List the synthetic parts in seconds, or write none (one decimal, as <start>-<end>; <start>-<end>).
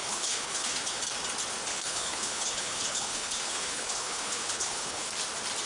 0.0-1.0; 1.7-5.1